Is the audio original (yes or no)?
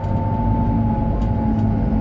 yes